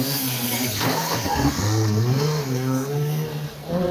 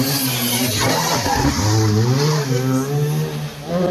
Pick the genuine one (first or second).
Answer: second